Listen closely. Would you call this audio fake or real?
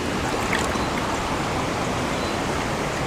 real